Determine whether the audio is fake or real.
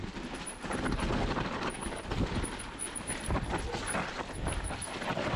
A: real